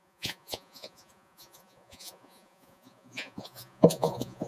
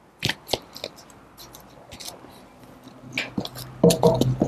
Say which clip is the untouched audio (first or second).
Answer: second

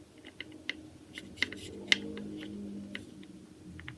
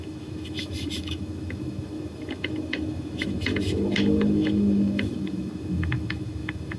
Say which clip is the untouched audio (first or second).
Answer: first